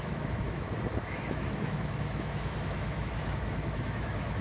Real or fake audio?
fake